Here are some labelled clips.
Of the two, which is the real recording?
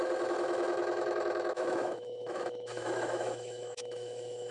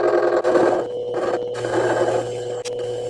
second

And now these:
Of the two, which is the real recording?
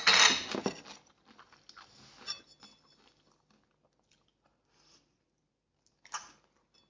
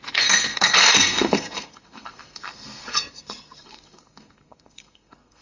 first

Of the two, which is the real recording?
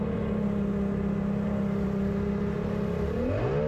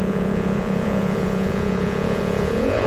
first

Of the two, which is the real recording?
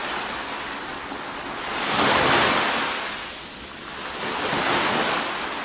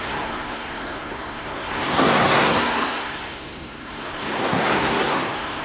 first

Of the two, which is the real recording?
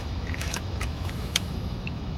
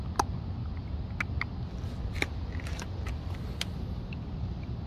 second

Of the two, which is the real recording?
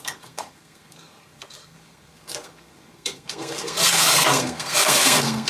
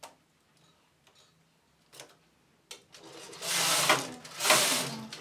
second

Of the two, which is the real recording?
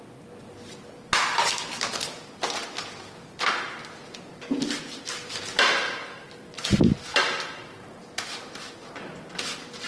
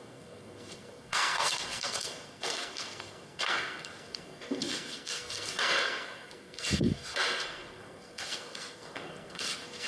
first